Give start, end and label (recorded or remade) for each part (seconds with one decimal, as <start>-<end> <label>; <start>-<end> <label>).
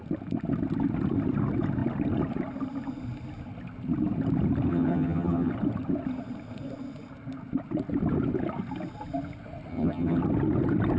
0.0-4.7 recorded; 4.7-5.5 remade; 5.5-9.7 recorded; 9.7-10.2 remade; 10.2-11.0 recorded